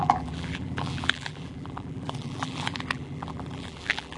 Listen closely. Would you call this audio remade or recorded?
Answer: remade